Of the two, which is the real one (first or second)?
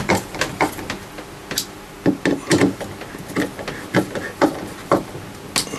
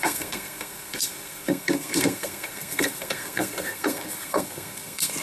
first